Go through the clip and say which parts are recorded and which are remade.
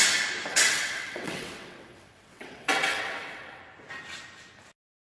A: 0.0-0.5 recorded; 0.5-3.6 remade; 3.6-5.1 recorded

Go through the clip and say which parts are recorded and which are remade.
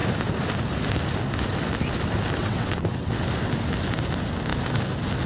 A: 0.0-2.4 recorded; 2.4-3.1 remade; 3.1-5.3 recorded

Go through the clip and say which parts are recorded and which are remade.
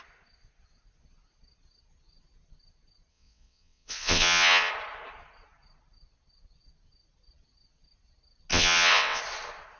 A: 0.0-3.1 recorded; 3.1-4.7 remade; 4.7-8.5 recorded; 8.5-9.2 remade; 9.2-9.8 recorded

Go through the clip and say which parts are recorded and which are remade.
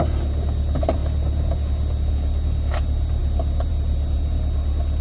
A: 0.0-5.0 recorded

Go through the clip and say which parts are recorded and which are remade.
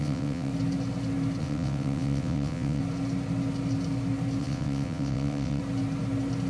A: 0.0-0.5 remade; 0.5-1.4 recorded; 1.4-2.8 remade; 2.8-4.4 recorded; 4.4-5.6 remade; 5.6-6.5 recorded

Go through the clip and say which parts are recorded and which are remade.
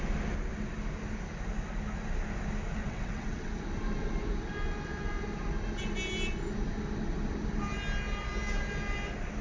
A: 0.0-2.8 recorded; 2.8-3.5 remade; 3.5-9.4 recorded